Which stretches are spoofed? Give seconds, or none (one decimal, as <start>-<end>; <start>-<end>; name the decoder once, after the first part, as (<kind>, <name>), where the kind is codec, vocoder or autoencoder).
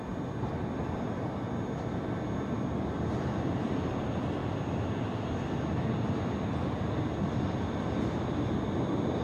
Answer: none